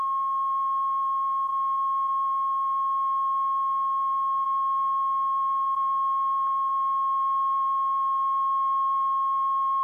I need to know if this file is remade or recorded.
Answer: recorded